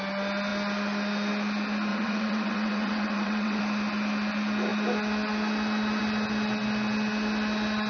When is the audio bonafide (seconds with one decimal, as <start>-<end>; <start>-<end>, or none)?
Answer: 0.0-1.9; 3.6-7.9